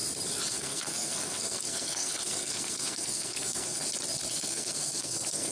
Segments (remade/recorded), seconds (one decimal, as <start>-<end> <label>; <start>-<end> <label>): 0.0-0.5 recorded; 0.5-3.8 remade; 3.8-4.3 recorded; 4.3-5.5 remade